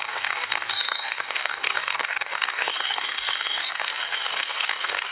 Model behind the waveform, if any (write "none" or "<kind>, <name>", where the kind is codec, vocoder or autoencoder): codec, DAC